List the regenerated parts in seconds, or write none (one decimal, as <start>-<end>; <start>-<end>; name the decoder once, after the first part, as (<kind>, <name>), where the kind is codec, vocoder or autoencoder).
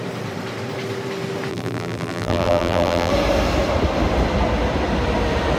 1.5-3.1 (vocoder, BigVGAN v2)